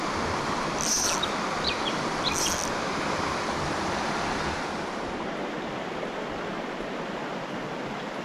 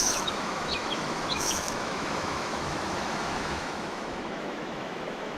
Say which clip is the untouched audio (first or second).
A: first